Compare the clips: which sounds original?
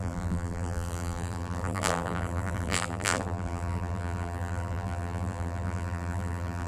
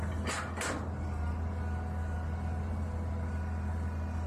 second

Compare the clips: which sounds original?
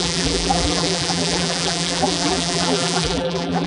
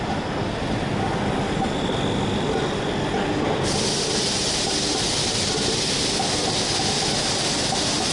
second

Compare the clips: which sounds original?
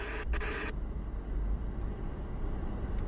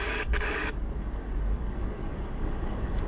first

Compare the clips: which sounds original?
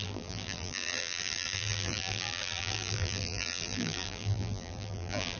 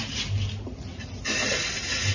second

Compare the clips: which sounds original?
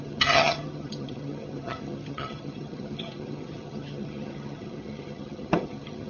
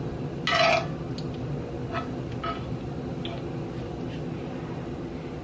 second